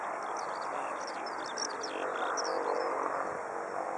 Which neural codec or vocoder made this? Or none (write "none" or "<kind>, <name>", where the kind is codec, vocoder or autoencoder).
none